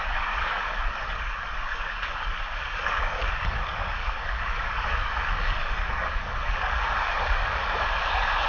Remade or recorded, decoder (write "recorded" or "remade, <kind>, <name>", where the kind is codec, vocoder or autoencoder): remade, codec, DAC